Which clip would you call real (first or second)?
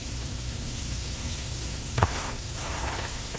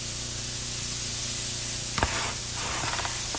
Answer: second